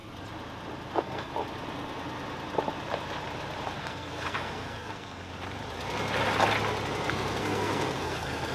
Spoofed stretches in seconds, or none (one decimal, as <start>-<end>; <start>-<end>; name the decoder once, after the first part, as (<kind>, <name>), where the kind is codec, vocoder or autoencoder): 0.9-1.3 (codec, SNAC); 3.8-5.3; 7.1-8.5